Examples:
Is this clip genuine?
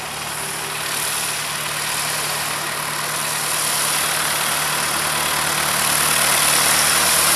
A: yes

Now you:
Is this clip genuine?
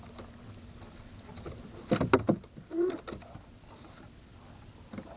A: yes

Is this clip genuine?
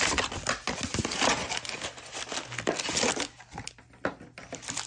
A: yes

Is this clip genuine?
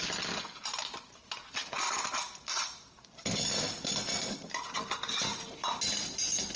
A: yes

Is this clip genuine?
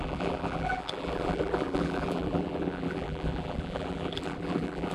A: no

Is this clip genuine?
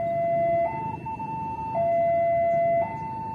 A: yes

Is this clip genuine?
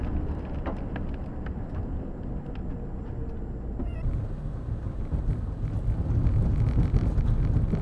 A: yes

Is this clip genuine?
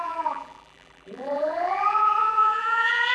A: no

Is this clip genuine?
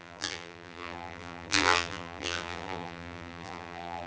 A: no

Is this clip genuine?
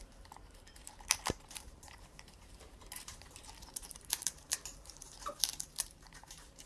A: no